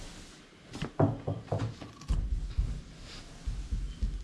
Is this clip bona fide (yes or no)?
yes